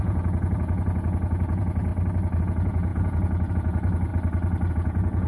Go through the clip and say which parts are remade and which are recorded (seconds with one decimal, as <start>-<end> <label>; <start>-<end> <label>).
0.0-1.9 remade; 1.9-2.4 recorded; 2.4-4.1 remade; 4.1-4.7 recorded; 4.7-5.3 remade